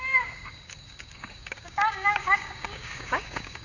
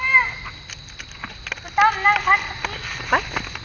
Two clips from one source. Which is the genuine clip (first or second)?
second